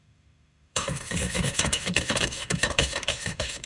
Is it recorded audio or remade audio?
remade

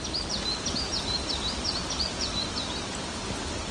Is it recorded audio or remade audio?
recorded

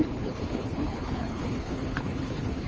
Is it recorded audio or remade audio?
remade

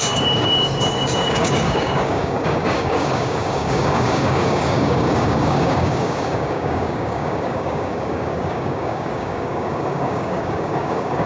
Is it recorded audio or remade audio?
remade